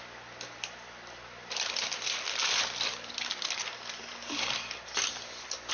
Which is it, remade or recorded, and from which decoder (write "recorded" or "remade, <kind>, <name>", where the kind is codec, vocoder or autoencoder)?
recorded